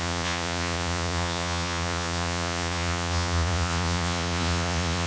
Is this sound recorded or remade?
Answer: remade